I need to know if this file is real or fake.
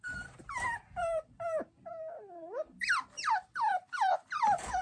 fake